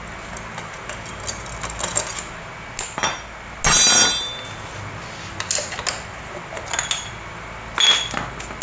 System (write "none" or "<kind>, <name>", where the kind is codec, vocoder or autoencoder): none